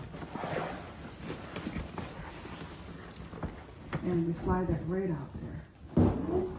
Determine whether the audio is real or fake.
real